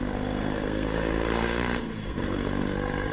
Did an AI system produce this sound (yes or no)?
yes